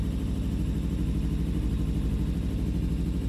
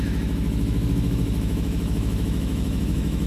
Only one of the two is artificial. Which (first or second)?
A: second